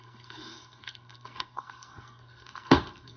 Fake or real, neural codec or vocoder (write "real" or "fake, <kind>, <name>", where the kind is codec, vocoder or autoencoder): fake, codec, SNAC